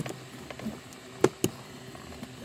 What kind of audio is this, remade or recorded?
recorded